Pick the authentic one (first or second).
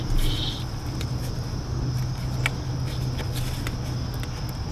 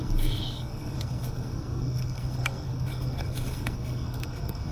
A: first